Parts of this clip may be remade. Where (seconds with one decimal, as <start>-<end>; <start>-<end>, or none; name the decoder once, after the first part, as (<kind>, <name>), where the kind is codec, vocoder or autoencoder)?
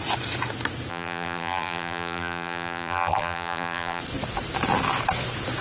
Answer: 0.9-4.0 (vocoder, BigVGAN v2)